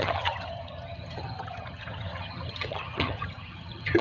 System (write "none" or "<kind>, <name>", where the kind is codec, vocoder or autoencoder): vocoder, HiFi-GAN